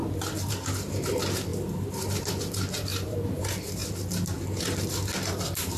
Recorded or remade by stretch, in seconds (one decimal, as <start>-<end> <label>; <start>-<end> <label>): 0.0-2.9 recorded; 2.9-3.4 remade; 3.4-5.8 recorded